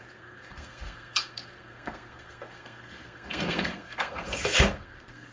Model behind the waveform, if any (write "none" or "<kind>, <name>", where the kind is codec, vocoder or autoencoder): codec, SNAC